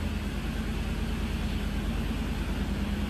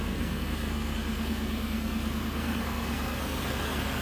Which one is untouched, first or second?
first